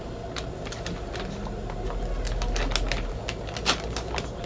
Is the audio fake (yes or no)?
no